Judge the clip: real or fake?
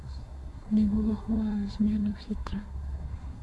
fake